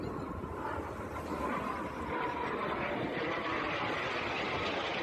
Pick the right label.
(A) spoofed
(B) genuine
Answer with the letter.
B